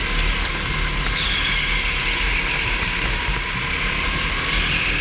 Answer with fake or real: real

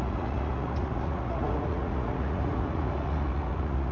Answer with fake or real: fake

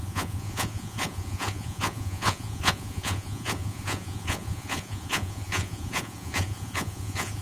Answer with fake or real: fake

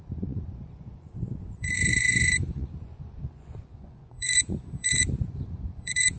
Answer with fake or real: fake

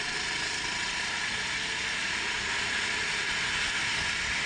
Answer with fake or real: real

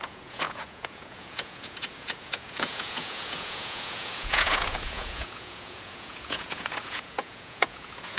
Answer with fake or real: fake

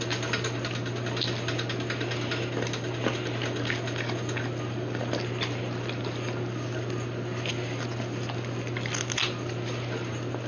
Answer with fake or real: real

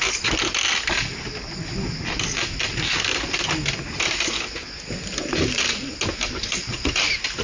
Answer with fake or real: real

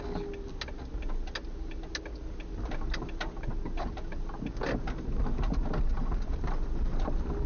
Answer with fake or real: real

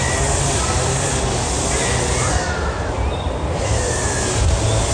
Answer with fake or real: real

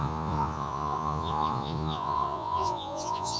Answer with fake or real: fake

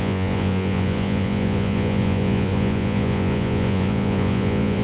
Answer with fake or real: fake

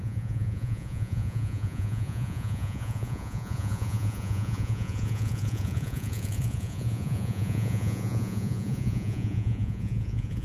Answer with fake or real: fake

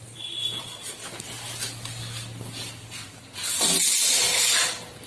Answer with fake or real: real